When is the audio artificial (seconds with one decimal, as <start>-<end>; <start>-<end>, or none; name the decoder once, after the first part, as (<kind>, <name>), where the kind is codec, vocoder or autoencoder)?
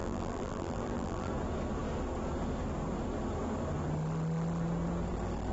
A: 0.0-1.3 (vocoder, BigVGAN v2)